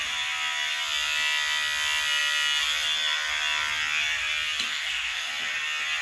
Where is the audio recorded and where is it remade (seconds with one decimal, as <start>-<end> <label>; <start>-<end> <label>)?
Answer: 0.0-4.7 recorded; 4.7-5.3 remade; 5.3-6.0 recorded